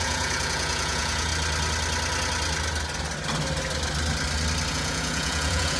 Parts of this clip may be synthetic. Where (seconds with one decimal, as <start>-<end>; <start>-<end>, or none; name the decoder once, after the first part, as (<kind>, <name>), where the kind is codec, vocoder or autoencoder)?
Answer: 0.0-1.3 (vocoder, Vocos); 4.7-5.8